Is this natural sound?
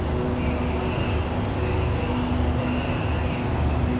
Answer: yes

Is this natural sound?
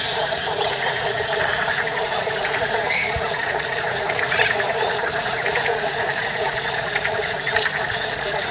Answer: no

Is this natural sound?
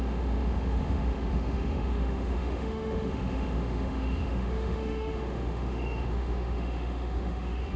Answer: no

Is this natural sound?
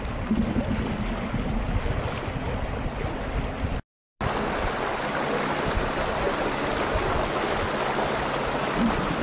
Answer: yes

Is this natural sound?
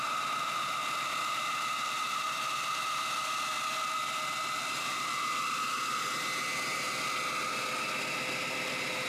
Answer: yes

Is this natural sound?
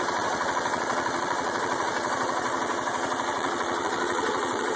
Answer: no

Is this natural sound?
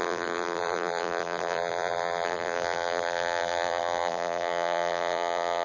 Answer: no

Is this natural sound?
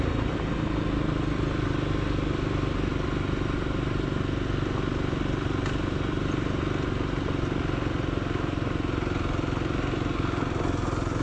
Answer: yes